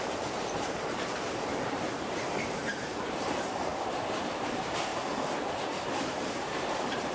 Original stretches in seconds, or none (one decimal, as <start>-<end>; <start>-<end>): 3.7-4.2; 4.9-5.9